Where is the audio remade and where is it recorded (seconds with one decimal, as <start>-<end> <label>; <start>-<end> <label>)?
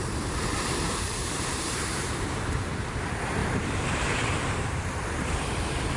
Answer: 0.0-0.5 recorded; 0.5-2.9 remade; 2.9-3.4 recorded; 3.4-5.6 remade; 5.6-6.0 recorded